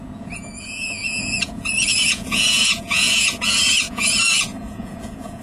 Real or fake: fake